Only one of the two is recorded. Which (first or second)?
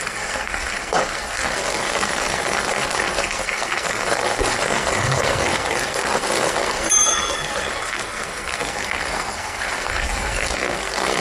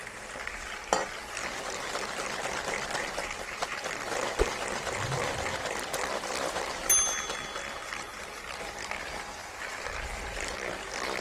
second